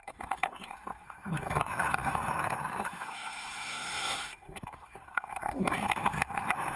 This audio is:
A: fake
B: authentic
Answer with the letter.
A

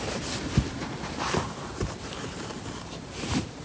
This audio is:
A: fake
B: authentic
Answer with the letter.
A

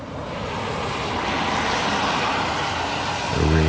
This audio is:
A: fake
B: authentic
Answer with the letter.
B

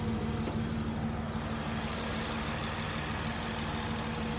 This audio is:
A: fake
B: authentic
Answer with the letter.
B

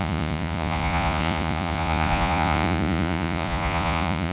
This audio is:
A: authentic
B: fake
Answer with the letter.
B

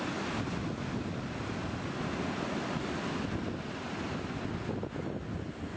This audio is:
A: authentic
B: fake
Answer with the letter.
A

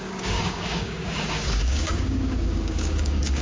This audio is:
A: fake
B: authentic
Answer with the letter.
A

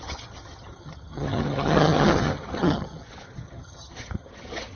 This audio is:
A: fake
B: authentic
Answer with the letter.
A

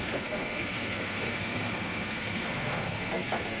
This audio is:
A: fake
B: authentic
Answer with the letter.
A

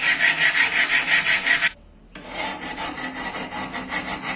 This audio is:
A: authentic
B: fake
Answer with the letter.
A